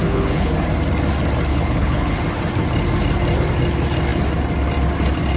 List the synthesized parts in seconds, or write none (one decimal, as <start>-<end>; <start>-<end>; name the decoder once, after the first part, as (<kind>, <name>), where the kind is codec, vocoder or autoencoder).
0.0-0.5 (codec, HILCodec); 1.5-2.2